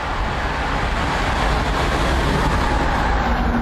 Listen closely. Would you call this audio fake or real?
real